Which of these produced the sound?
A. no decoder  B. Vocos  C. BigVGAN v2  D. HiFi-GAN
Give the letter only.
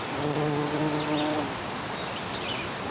A